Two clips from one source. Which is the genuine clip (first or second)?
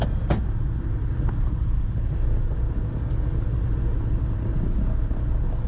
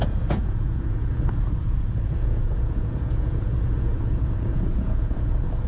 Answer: first